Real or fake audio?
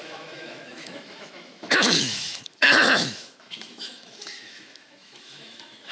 fake